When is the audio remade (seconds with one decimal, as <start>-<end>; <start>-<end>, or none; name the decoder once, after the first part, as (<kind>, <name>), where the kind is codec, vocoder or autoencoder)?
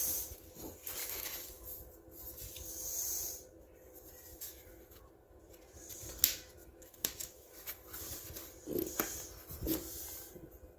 1.0-1.8 (autoencoder, DAC-VAE); 4.3-5.0; 6.6-7.7